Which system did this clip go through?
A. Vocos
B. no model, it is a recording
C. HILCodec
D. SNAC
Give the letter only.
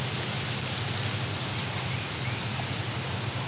B